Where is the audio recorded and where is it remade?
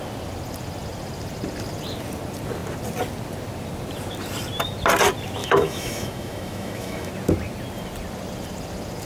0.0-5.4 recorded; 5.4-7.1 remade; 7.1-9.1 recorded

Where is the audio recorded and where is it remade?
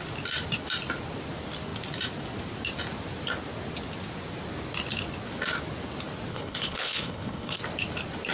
0.0-6.3 recorded; 6.3-7.6 remade; 7.6-8.3 recorded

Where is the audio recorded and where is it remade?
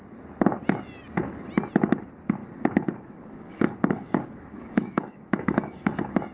0.0-2.4 recorded; 2.4-6.3 remade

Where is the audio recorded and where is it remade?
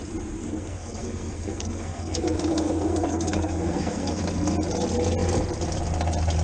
0.0-0.4 recorded; 0.4-4.2 remade; 4.2-6.4 recorded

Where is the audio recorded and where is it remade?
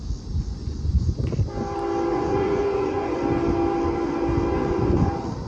0.0-0.6 recorded; 0.6-1.2 remade; 1.2-2.1 recorded; 2.1-3.2 remade; 3.2-4.5 recorded; 4.5-5.1 remade; 5.1-5.5 recorded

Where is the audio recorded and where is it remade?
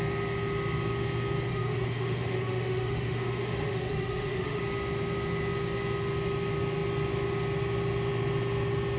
0.0-1.5 recorded; 1.5-4.6 remade; 4.6-9.0 recorded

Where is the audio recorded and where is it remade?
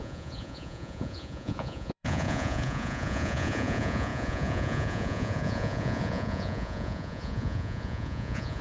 0.0-8.6 remade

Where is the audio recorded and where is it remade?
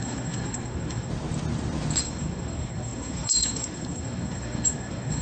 0.0-1.1 remade; 1.1-2.0 recorded; 2.0-5.2 remade